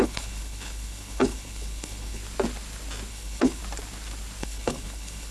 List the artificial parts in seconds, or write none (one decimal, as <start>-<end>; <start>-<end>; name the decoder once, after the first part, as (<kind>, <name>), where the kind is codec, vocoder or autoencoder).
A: 0.0-2.2 (codec, HILCodec); 3.1-3.6; 4.4-5.3